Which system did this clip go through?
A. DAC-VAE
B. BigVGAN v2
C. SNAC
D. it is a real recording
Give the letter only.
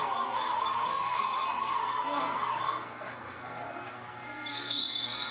C